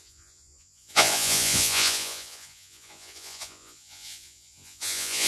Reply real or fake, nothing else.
fake